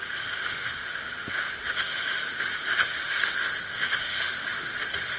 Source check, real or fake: fake